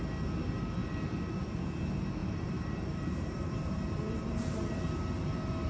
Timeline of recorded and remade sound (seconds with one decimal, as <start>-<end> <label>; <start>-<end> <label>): 0.0-0.8 recorded; 0.8-1.5 remade; 1.5-2.2 recorded; 2.2-5.7 remade